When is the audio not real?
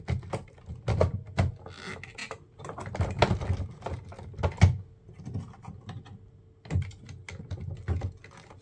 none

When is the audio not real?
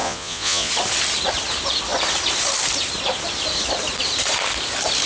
0.0-0.7 (vocoder, Vocos)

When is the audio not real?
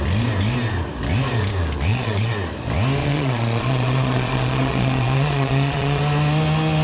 1.9-2.5 (vocoder, Vocos); 3.0-6.0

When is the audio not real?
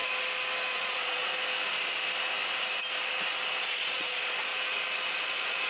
0.7-1.3 (vocoder, Vocos); 3.6-4.5; 5.2-5.7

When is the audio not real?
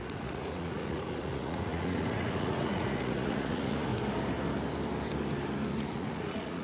0.0-3.9 (vocoder, Vocos); 5.8-6.6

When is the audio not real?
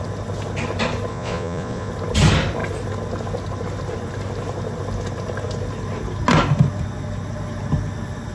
1.1-1.9 (vocoder, Vocos)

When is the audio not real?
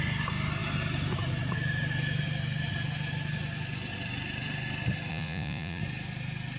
5.1-5.8 (vocoder, Vocos)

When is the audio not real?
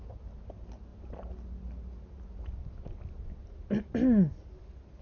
none